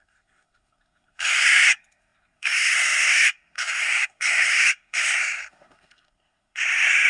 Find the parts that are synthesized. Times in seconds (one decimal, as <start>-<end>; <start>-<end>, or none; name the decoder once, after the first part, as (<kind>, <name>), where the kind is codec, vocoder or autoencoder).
0.0-7.1 (codec, SNAC)